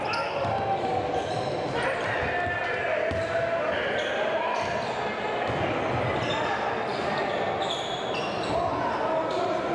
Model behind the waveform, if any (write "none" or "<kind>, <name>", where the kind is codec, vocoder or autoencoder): none